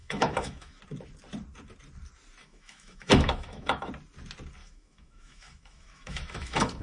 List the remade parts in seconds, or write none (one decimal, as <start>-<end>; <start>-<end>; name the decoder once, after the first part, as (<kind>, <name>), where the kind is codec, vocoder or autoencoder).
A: 0.0-0.8 (autoencoder, DAC-VAE); 2.4-3.9; 4.6-6.8